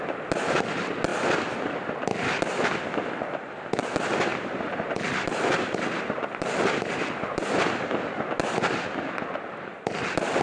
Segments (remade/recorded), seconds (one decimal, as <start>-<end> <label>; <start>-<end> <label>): 0.0-4.3 recorded; 4.3-7.5 remade; 7.5-10.4 recorded